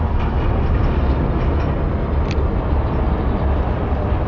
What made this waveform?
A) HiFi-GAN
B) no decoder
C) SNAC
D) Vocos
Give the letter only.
B